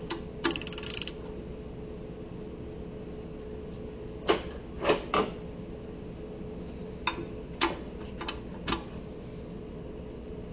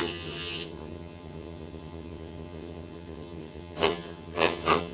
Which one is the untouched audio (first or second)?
first